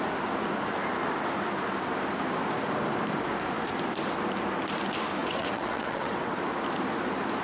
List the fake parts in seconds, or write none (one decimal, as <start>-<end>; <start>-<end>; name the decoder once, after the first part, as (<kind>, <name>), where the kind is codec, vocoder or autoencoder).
5.2-6.4 (vocoder, WaveNeXt)